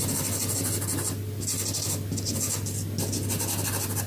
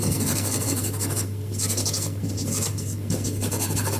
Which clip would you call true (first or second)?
first